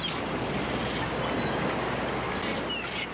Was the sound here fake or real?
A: real